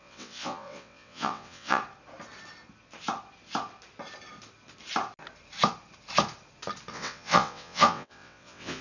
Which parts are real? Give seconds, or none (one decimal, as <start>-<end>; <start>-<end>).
1.8-6.9